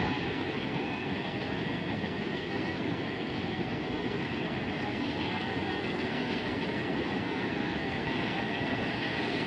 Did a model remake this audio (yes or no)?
yes